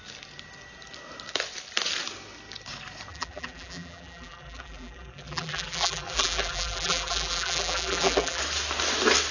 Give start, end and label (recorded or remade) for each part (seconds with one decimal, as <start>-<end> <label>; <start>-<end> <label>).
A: 0.0-3.1 recorded; 3.1-8.4 remade; 8.4-9.3 recorded